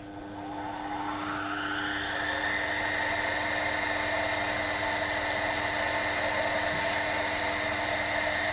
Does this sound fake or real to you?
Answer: real